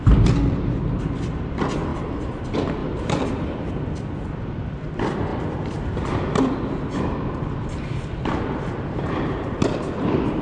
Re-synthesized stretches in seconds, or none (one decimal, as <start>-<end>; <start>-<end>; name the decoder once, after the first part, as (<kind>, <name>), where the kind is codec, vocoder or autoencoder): 1.9-2.4 (vocoder, BigVGAN v2); 2.8-3.7; 5.3-6.4